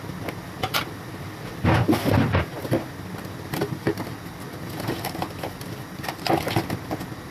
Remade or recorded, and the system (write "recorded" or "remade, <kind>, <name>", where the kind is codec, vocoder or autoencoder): remade, vocoder, BigVGAN v2